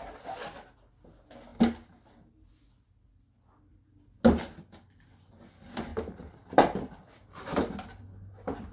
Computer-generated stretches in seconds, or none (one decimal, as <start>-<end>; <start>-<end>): 5.9-8.0